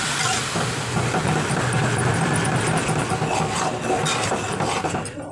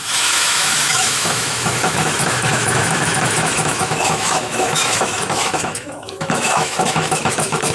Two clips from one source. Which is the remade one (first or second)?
second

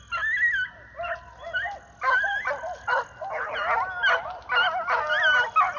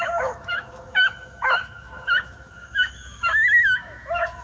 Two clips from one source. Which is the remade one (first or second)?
second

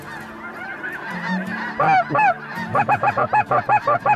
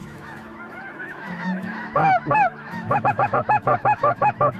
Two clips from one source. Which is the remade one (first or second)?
second